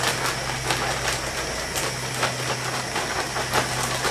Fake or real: real